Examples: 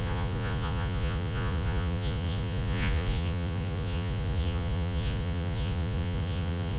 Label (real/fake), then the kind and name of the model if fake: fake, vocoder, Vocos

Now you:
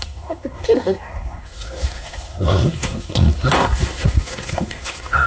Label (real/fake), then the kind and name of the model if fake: fake, codec, SNAC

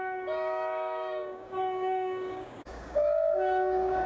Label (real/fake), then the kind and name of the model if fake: fake, codec, DAC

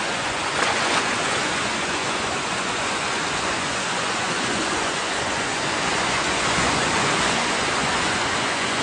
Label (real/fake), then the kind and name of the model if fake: fake, vocoder, Vocos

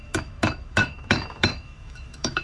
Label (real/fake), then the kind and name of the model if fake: fake, autoencoder, DAC-VAE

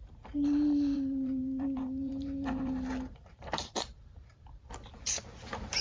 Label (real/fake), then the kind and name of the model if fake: fake, vocoder, BigVGAN v2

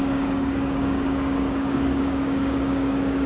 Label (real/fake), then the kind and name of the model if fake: fake, codec, DAC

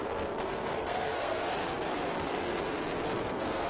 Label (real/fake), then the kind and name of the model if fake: fake, codec, SNAC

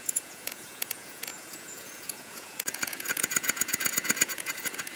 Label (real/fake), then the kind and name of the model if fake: fake, vocoder, Vocos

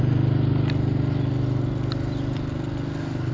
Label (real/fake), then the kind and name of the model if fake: real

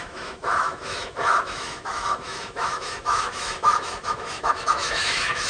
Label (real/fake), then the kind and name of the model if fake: fake, autoencoder, DAC-VAE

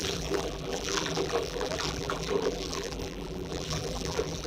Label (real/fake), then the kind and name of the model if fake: fake, vocoder, BigVGAN v2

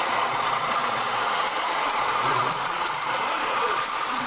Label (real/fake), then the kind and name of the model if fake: fake, vocoder, Vocos